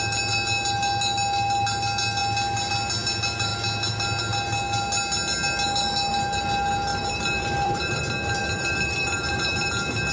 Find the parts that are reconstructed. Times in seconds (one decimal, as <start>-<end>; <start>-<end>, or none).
6.9-8.0; 8.4-9.7

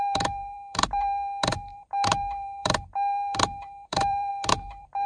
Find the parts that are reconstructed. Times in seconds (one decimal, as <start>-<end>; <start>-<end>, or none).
0.0-5.1

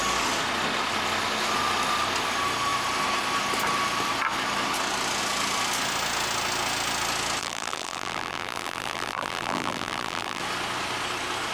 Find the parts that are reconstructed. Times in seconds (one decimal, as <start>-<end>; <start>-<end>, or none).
7.4-10.4

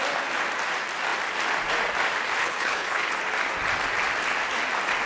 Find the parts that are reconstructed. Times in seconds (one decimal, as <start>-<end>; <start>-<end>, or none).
2.4-3.1

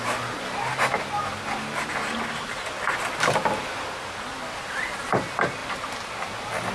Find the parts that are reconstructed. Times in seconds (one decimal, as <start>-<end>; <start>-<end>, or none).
none

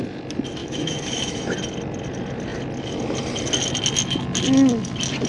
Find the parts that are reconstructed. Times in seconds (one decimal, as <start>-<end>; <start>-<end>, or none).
0.6-1.4

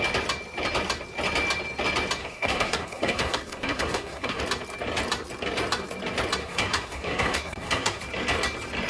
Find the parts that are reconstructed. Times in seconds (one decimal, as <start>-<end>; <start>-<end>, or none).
2.2-4.4; 6.4-8.0